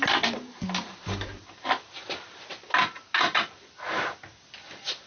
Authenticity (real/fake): real